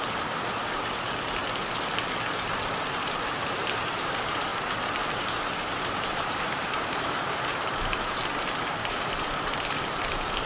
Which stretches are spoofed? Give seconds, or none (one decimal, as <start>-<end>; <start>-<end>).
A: 0.0-1.4; 2.5-4.5; 5.1-10.5